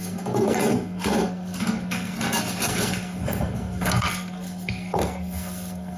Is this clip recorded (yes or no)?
no